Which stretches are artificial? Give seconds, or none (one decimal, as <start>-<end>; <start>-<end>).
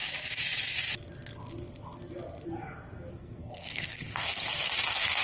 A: 3.1-5.2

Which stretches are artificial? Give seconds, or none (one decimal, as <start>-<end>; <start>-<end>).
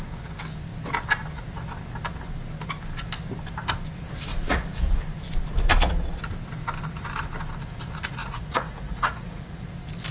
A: 4.3-5.0; 5.7-6.2; 8.2-9.7